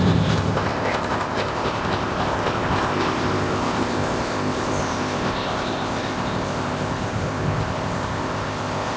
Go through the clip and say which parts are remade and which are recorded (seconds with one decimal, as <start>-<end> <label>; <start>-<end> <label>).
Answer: 0.0-9.0 remade